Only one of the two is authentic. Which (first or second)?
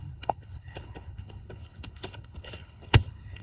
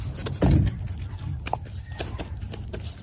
second